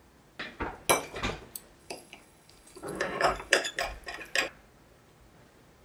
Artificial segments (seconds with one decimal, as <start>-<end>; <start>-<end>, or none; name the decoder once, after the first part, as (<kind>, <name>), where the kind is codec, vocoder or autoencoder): 1.8-3.7 (codec, DAC)